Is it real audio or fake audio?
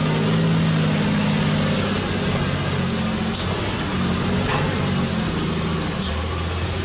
real